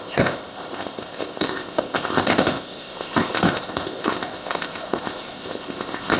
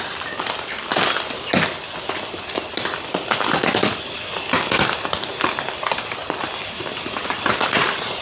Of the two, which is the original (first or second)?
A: second